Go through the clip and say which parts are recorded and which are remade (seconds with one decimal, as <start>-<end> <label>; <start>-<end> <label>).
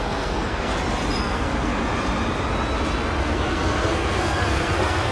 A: 0.0-0.7 remade; 0.7-1.2 recorded; 1.2-1.7 remade; 1.7-3.2 recorded; 3.2-5.1 remade